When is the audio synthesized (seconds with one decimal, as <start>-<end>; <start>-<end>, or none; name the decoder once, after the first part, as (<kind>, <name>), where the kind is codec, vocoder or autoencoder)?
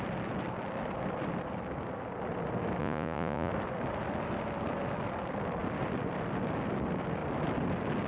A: 2.8-3.5 (vocoder, Vocos)